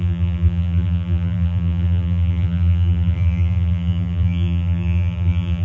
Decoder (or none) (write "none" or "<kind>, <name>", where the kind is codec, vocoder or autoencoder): vocoder, BigVGAN v2